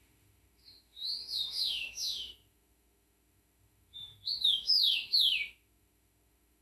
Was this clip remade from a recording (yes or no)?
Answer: yes